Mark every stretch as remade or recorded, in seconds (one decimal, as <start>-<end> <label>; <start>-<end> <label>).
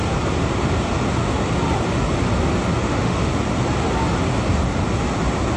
0.0-2.8 recorded; 2.8-3.3 remade; 3.3-5.6 recorded